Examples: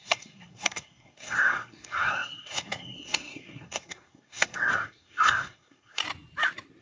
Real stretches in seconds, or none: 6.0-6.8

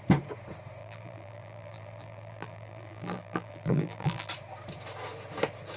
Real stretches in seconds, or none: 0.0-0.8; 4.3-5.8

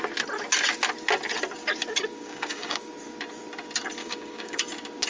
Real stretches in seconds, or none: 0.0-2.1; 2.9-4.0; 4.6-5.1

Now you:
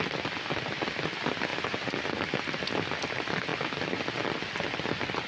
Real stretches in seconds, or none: 0.0-5.3

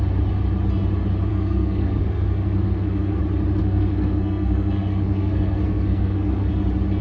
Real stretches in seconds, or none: 0.0-1.3; 3.2-3.6; 6.5-7.0

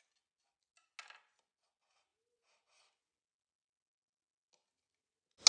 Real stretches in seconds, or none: 0.0-5.5

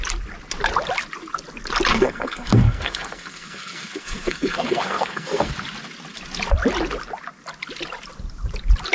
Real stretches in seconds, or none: 0.0-1.9; 5.5-8.9